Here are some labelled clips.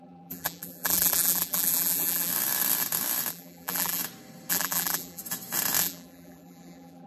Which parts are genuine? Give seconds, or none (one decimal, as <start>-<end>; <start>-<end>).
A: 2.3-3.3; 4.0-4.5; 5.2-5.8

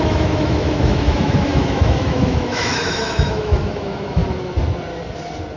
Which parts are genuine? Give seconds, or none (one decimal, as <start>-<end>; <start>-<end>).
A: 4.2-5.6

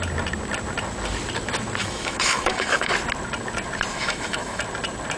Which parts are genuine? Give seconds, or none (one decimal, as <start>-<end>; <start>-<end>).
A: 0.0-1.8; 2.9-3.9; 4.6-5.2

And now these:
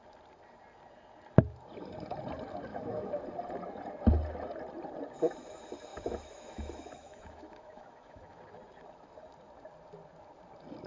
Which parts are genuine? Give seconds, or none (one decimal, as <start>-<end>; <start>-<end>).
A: 0.0-2.7; 3.2-5.9; 8.4-10.9

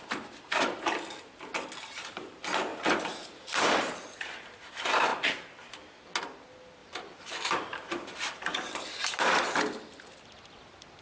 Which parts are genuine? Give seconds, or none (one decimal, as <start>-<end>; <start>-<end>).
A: 0.0-2.7; 3.9-6.8; 9.2-11.0

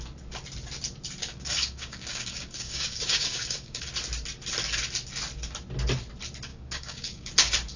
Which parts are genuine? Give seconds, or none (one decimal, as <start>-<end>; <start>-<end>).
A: 0.0-1.2; 3.9-6.5; 7.3-7.8

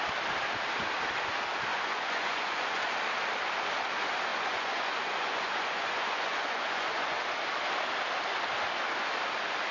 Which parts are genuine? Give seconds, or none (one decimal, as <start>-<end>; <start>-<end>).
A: 0.0-1.7; 2.9-4.3; 7.2-9.7

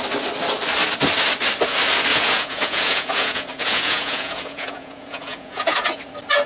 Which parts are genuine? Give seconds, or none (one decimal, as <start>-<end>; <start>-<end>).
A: 0.0-2.1; 6.0-6.5